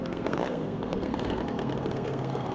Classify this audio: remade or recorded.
remade